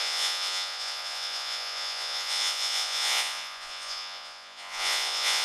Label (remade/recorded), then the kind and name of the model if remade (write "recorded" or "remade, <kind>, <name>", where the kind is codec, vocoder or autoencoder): remade, vocoder, Vocos